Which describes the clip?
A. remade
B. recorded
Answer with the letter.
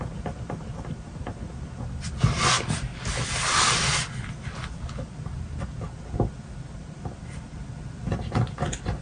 B